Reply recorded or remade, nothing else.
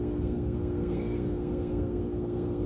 remade